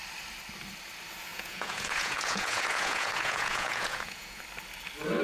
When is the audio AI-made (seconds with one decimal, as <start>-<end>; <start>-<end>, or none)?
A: 1.3-4.4